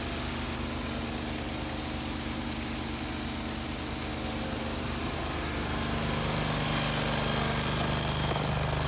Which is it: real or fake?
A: real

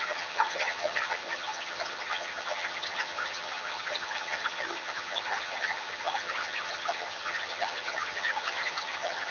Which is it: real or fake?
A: fake